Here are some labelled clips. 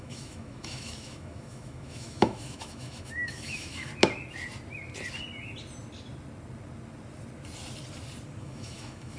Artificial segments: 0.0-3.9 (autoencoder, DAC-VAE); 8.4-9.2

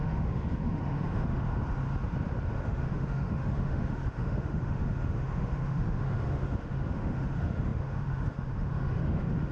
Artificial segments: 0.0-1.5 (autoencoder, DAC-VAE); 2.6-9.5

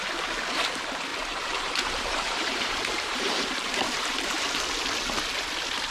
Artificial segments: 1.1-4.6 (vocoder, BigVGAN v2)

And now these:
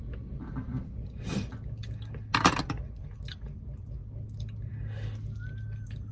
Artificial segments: none